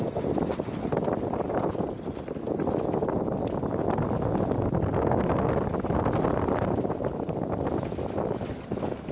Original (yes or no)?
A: yes